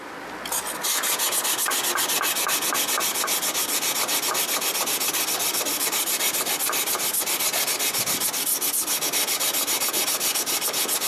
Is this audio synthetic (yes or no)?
no